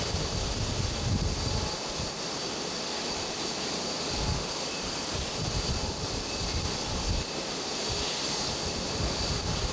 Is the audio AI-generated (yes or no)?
yes